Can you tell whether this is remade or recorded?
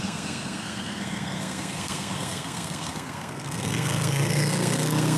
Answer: remade